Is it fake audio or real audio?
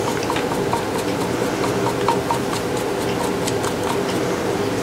real